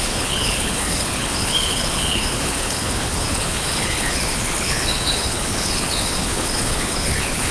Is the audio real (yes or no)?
no